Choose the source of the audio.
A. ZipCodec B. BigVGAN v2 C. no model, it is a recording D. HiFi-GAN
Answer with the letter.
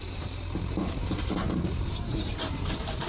B